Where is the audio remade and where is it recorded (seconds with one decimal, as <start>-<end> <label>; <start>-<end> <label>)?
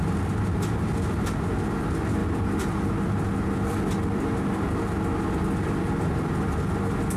0.0-7.2 recorded